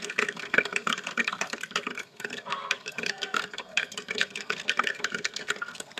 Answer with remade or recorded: remade